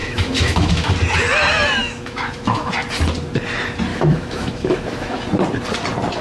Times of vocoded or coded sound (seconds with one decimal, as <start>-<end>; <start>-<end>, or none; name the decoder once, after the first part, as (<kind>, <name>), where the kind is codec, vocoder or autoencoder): 0.0-0.9 (autoencoder, DAC-VAE); 1.8-2.7; 3.9-5.2

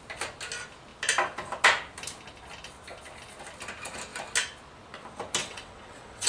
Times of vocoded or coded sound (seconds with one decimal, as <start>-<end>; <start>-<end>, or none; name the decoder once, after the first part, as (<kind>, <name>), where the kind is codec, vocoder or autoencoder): 5.4-6.3 (vocoder, WaveNeXt)